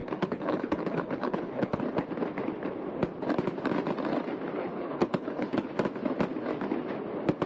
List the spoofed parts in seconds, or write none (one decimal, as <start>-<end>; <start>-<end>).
0.0-1.8; 4.6-5.7